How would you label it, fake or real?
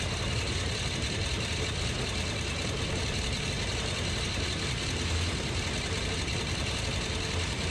real